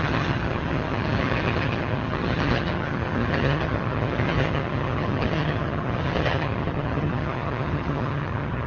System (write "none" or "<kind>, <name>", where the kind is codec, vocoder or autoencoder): vocoder, HiFi-GAN